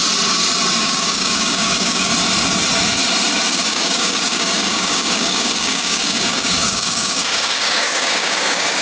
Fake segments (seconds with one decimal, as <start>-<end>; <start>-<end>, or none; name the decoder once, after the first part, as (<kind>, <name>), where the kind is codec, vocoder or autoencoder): 0.8-2.1 (codec, DAC); 3.5-8.8